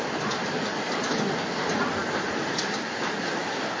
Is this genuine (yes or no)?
yes